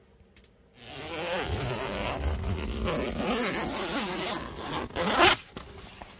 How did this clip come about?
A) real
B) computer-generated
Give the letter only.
A